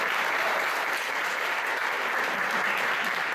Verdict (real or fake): fake